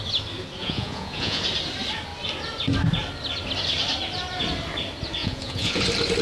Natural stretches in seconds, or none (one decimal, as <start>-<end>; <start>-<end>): 0.0-0.6; 1.4-5.2; 5.8-6.2